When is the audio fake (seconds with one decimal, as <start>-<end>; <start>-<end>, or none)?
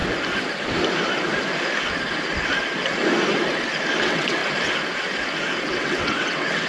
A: 4.0-4.4; 5.7-6.7